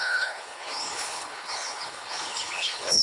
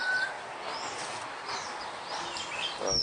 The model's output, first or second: first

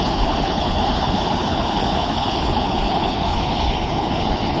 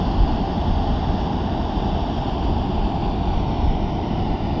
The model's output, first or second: first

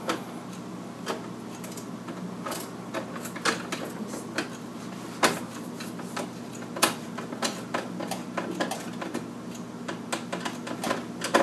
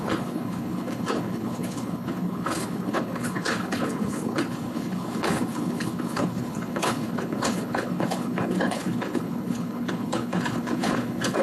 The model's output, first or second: second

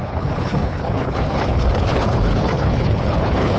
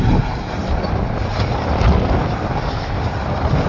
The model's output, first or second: first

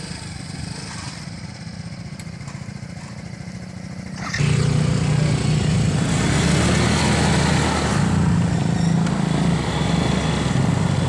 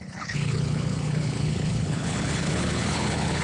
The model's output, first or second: second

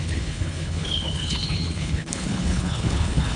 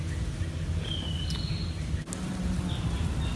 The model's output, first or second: first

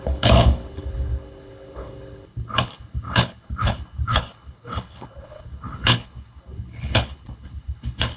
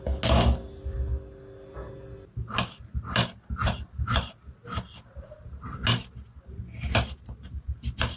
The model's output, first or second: first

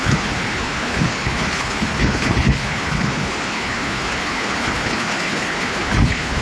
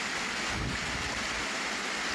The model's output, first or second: first